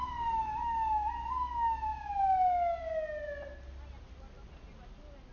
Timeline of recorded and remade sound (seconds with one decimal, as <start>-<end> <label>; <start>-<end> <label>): 0.0-5.3 recorded